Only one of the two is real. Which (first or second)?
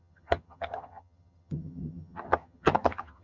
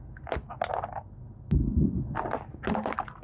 second